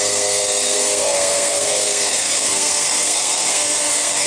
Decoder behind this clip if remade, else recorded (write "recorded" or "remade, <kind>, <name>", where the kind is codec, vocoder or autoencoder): remade, codec, SNAC